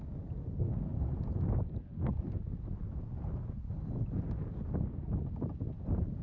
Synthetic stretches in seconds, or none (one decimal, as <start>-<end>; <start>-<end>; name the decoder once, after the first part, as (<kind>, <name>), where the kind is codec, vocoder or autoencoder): none

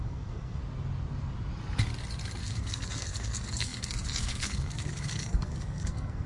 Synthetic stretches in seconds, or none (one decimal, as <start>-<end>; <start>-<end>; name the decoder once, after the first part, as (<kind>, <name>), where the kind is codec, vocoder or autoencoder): 0.0-0.6 (codec, SNAC); 2.4-6.3

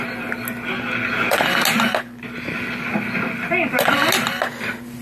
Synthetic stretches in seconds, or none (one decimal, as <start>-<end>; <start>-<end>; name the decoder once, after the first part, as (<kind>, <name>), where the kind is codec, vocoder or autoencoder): none